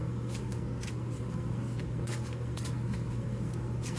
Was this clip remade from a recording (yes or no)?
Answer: yes